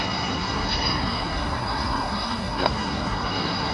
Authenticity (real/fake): fake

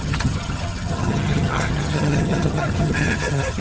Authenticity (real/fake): fake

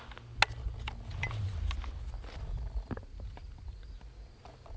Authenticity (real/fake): real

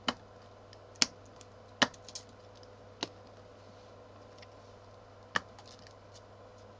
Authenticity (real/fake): real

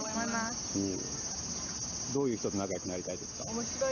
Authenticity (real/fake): real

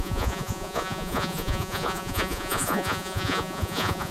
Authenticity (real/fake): fake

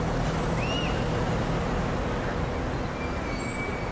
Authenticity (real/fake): real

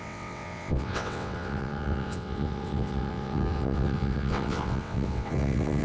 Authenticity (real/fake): fake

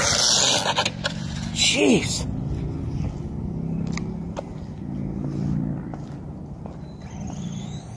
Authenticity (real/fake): real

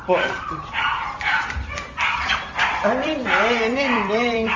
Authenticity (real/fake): fake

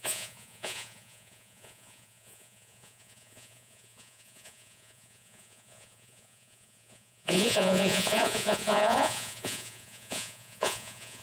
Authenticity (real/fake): fake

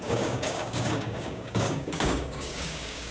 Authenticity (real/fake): fake